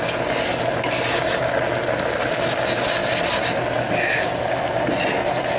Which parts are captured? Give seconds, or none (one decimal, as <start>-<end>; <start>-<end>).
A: 0.0-5.6